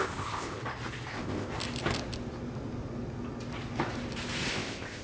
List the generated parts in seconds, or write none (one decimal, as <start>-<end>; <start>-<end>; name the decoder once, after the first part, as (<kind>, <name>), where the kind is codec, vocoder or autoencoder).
0.0-0.6 (codec, ZipCodec); 1.1-1.5; 4.5-5.0